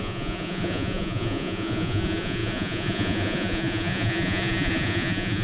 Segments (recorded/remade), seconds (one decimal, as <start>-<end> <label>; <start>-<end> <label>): 0.0-5.4 remade